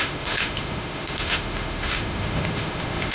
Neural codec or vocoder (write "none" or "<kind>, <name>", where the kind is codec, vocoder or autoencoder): autoencoder, DAC-VAE